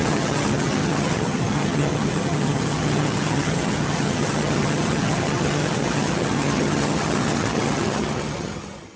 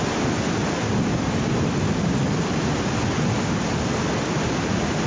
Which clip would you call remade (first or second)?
first